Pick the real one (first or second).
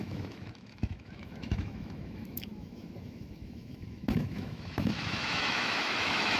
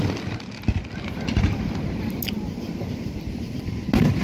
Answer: second